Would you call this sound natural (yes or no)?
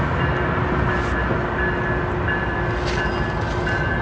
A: yes